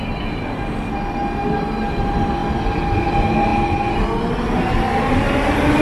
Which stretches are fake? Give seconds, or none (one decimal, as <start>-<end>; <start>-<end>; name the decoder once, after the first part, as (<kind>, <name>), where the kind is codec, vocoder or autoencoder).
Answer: none